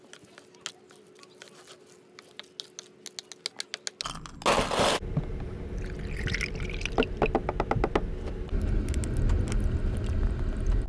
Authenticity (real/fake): real